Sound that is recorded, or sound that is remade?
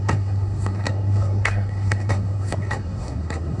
remade